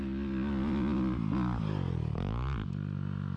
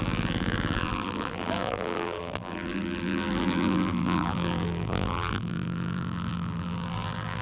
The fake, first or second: second